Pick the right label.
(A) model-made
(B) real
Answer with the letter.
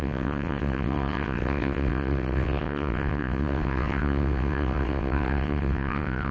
A